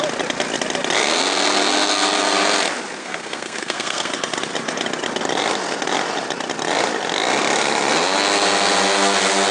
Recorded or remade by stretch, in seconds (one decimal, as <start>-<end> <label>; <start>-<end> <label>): 0.0-3.0 recorded; 3.0-4.1 remade; 4.1-9.5 recorded

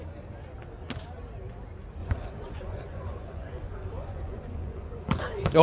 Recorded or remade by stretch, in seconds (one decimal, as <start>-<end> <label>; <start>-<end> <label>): 0.0-2.0 recorded; 2.0-5.6 remade

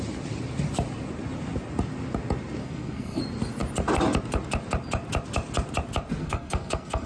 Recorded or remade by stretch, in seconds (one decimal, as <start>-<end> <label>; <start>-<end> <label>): 0.0-2.6 recorded; 2.6-3.2 remade; 3.2-6.2 recorded; 6.2-7.1 remade

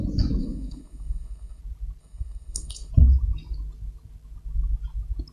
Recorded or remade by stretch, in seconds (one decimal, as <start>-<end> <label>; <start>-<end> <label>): 0.0-0.4 recorded; 0.4-1.6 remade; 1.6-2.0 recorded; 2.0-2.9 remade; 2.9-5.3 recorded

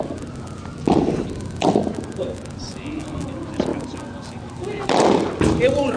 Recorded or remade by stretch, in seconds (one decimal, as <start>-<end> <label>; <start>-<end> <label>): 0.0-6.0 recorded

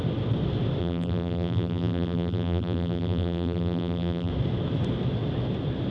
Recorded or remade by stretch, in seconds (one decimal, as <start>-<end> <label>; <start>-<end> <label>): 0.0-0.8 recorded; 0.8-4.3 remade; 4.3-5.9 recorded

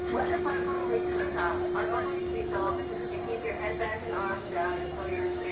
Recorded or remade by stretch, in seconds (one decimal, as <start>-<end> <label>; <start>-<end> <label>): 0.0-0.8 remade; 0.8-2.2 recorded; 2.2-2.8 remade; 2.8-3.8 recorded; 3.8-5.5 remade